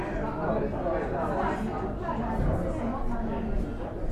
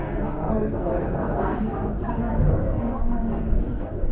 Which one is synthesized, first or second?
second